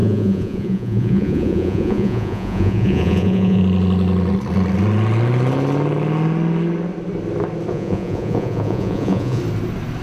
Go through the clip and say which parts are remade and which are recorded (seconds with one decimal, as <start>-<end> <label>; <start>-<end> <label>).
0.0-3.6 remade; 3.6-7.7 recorded; 7.7-9.4 remade; 9.4-10.0 recorded